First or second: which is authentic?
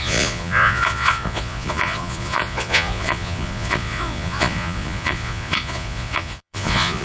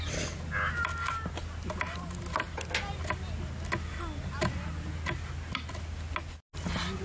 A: second